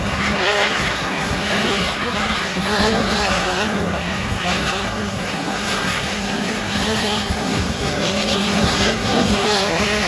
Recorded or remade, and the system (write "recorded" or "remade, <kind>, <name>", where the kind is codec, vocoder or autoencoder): remade, codec, SNAC